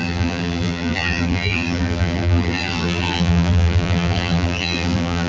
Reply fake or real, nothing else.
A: fake